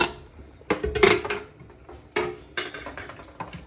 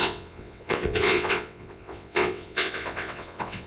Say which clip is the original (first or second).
first